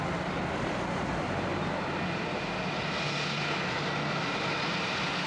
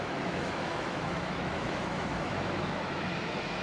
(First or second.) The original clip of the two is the first